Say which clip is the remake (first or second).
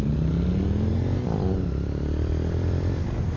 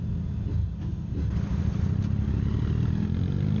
first